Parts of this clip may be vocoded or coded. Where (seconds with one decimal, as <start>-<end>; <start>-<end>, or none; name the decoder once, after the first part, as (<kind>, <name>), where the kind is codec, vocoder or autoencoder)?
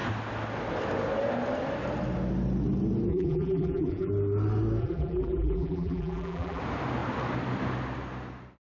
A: 3.1-4.1 (vocoder, BigVGAN v2); 4.8-6.6